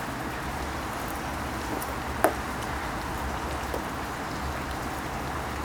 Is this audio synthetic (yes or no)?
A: no